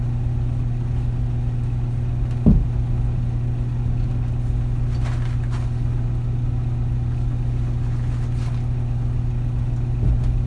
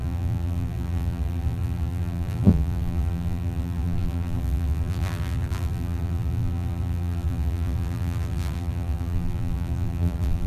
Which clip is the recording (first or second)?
first